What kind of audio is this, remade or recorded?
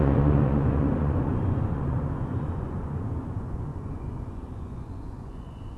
remade